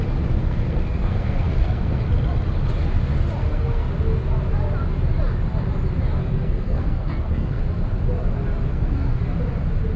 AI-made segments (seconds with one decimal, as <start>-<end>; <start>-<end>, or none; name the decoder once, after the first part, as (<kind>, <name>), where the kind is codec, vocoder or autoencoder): 0.4-2.0 (codec, SNAC); 3.4-3.9; 6.2-7.6; 8.7-9.2